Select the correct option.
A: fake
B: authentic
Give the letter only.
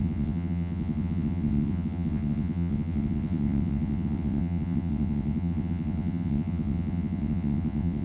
A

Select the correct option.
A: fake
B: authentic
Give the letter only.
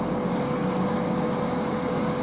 A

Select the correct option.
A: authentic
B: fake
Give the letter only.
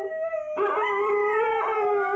A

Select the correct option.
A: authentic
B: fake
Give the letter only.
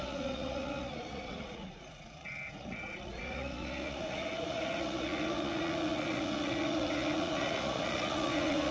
B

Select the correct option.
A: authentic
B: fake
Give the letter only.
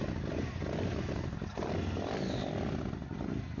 A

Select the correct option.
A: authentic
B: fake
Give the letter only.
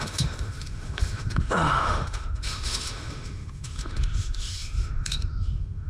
B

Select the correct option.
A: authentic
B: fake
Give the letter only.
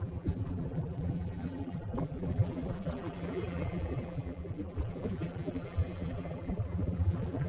B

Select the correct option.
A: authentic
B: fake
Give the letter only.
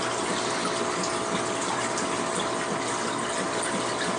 A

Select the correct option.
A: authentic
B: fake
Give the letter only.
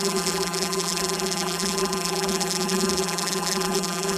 B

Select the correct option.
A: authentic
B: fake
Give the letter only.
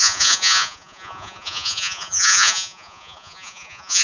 B